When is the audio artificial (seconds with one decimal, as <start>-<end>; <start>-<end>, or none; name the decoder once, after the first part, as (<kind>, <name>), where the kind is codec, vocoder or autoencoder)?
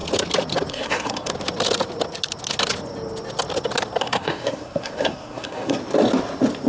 0.7-1.3 (codec, SNAC); 4.0-5.8